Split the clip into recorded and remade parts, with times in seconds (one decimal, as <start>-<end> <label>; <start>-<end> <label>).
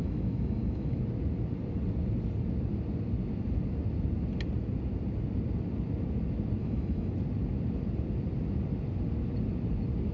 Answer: 0.0-1.0 remade; 1.0-6.6 recorded; 6.6-7.1 remade; 7.1-10.1 recorded